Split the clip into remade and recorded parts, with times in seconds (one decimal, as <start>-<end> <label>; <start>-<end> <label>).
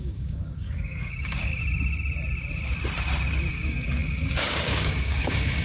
0.0-1.6 remade; 1.6-3.5 recorded; 3.5-5.6 remade